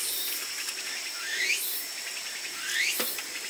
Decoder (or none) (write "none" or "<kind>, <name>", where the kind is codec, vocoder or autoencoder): none